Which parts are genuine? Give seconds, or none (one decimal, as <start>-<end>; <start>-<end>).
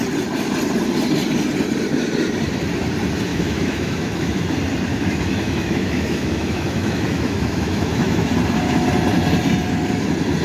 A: 0.0-3.3; 4.4-4.9; 8.3-10.4